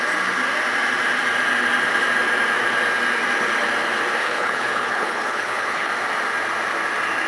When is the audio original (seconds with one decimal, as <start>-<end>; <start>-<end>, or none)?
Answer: 0.0-4.2; 5.9-7.3